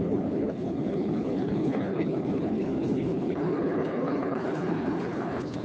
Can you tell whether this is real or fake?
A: fake